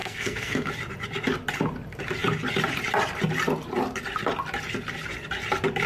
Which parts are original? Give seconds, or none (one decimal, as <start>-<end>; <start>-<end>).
0.7-5.9